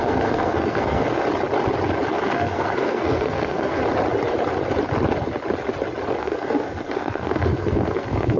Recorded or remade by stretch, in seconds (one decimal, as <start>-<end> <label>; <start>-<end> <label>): 0.0-1.2 remade; 1.2-2.1 recorded; 2.1-3.8 remade; 3.8-6.2 recorded; 6.2-8.4 remade